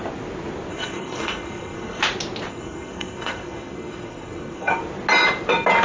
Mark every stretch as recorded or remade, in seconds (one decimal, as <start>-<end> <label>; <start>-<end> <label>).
0.0-0.7 recorded; 0.7-2.0 remade; 2.0-2.5 recorded; 2.5-4.8 remade; 4.8-5.8 recorded